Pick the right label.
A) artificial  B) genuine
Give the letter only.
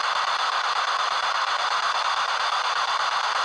B